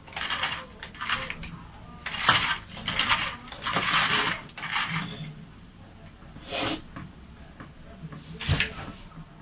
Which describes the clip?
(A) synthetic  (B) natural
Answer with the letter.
B